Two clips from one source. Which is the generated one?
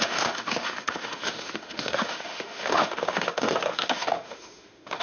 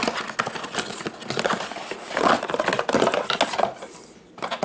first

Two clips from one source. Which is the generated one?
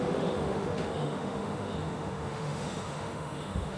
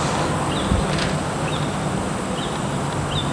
first